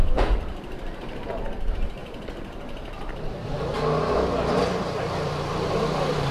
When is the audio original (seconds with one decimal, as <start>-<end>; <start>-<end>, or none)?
2.0-3.1; 3.7-5.0